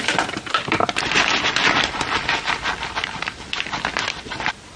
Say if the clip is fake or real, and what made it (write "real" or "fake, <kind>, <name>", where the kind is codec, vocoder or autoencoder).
real